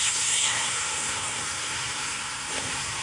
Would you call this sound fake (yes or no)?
yes